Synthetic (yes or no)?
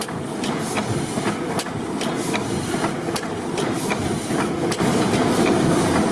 no